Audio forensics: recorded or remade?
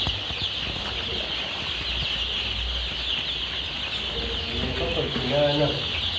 recorded